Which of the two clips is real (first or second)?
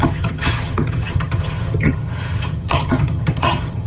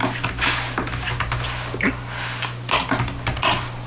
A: second